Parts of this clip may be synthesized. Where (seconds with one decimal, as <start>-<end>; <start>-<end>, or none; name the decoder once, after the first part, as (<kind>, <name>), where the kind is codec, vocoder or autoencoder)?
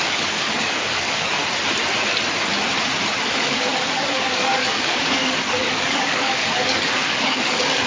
0.0-1.4 (codec, DAC); 3.3-7.9